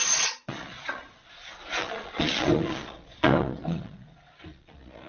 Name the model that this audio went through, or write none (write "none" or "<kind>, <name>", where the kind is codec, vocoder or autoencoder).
vocoder, Vocos